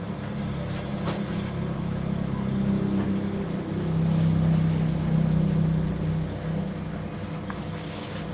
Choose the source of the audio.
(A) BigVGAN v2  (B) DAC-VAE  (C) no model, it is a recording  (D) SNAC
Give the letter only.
C